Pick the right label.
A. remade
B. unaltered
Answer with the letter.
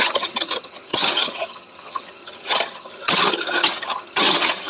A